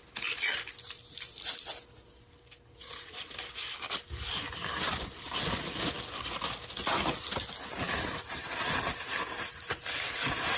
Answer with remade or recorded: recorded